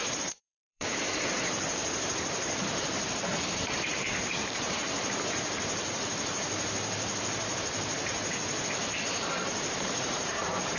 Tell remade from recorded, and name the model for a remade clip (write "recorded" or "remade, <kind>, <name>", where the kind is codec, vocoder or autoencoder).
remade, vocoder, BigVGAN v2